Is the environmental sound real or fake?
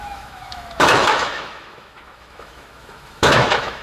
fake